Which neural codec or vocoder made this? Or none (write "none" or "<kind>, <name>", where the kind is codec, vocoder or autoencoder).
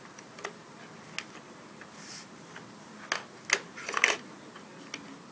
none